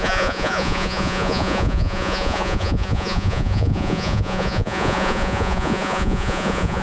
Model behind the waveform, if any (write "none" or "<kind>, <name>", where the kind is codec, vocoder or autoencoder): vocoder, Vocos